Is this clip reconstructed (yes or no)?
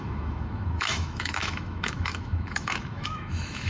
yes